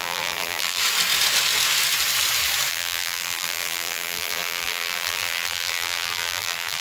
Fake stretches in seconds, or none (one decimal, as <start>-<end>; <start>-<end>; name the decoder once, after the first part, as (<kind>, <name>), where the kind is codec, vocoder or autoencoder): 0.0-0.8 (vocoder, BigVGAN v2); 2.7-6.8